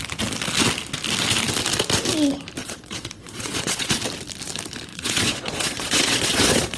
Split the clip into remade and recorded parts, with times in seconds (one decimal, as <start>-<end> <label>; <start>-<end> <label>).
0.0-2.6 recorded; 2.6-4.0 remade; 4.0-4.9 recorded; 4.9-6.8 remade